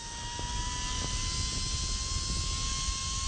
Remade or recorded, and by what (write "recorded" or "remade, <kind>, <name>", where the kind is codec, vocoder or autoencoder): recorded